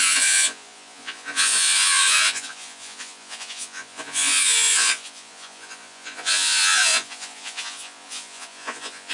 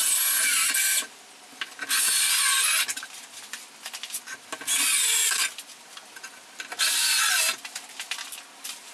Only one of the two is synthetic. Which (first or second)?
first